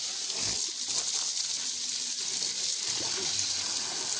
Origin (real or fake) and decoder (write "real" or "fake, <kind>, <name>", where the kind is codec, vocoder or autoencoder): real